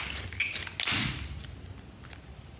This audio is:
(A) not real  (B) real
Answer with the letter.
B